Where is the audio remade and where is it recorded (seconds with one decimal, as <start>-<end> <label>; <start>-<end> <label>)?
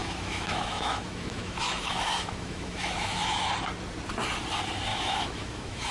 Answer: 0.0-3.5 remade; 3.5-4.9 recorded; 4.9-5.9 remade